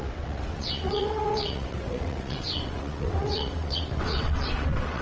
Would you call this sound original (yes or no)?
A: no